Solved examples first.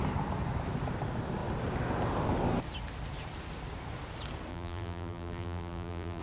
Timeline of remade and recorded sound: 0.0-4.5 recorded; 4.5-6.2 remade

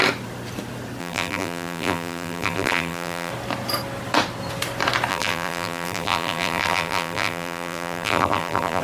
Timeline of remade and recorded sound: 0.0-1.0 recorded; 1.0-3.3 remade; 3.3-5.1 recorded; 5.1-8.8 remade

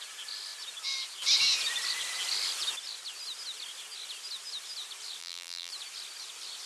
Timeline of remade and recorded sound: 0.0-5.2 recorded; 5.2-5.7 remade; 5.7-6.7 recorded

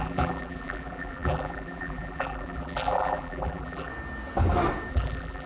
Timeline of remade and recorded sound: 0.0-3.9 remade; 3.9-4.9 recorded; 4.9-5.5 remade

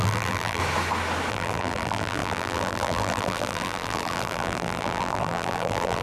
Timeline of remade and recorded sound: 0.0-0.6 remade; 0.6-1.3 recorded; 1.3-6.0 remade